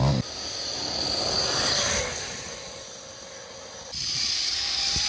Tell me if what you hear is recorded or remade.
recorded